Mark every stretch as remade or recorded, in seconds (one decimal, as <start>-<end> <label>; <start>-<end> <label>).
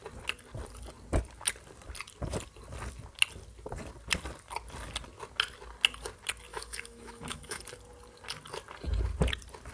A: 0.0-6.5 recorded; 6.5-7.6 remade; 7.6-9.7 recorded